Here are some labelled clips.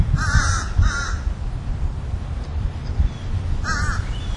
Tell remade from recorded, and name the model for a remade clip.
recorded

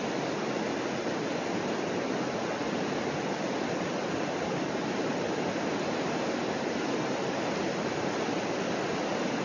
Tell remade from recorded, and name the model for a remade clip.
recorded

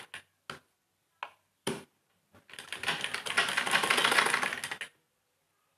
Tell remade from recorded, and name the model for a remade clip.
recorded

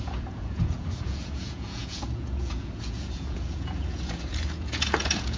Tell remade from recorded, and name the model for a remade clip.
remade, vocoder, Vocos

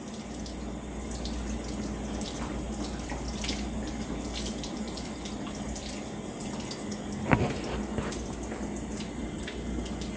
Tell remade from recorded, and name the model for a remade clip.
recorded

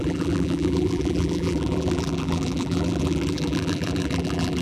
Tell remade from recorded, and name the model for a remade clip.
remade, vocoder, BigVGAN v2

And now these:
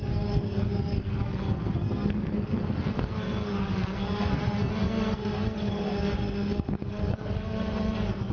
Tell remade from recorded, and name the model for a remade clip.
remade, codec, SNAC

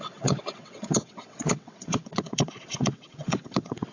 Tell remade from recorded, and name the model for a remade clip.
remade, vocoder, WaveNeXt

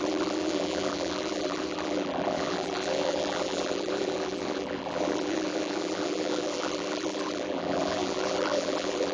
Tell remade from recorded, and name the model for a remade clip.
remade, vocoder, BigVGAN v2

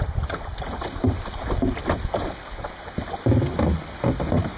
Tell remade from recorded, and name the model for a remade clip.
recorded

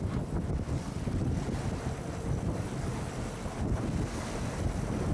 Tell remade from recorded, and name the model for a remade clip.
recorded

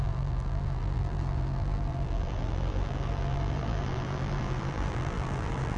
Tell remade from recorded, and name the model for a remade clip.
remade, vocoder, BigVGAN v2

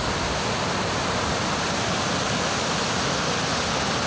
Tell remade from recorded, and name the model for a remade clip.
recorded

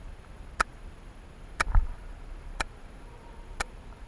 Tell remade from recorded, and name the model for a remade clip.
remade, vocoder, BigVGAN v2